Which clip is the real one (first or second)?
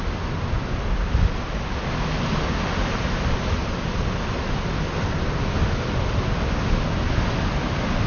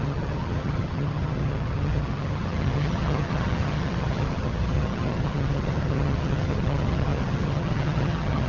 first